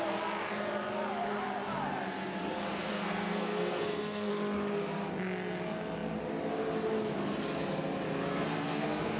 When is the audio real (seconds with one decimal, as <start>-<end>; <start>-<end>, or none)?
0.0-2.9; 4.3-8.3